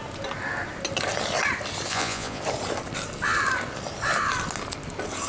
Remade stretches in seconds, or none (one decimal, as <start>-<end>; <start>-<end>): 1.9-2.4